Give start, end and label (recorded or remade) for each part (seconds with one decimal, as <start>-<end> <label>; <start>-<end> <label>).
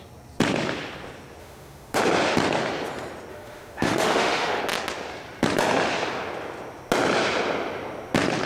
0.0-1.4 recorded; 1.4-2.0 remade; 2.0-3.3 recorded; 3.3-4.6 remade; 4.6-8.5 recorded